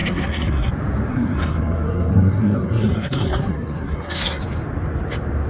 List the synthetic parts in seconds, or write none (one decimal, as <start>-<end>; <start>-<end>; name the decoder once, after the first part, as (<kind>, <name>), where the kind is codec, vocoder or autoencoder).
0.0-0.7 (codec, SNAC); 1.1-4.4